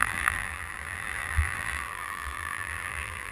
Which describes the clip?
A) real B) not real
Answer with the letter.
B